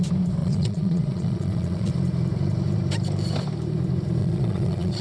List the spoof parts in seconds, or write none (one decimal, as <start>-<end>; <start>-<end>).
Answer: 0.4-1.9; 4.2-5.0